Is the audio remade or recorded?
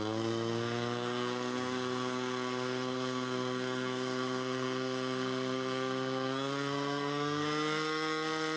remade